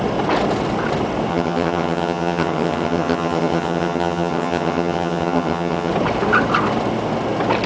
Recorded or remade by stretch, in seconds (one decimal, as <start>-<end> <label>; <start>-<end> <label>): 0.0-1.3 recorded; 1.3-5.9 remade; 5.9-7.7 recorded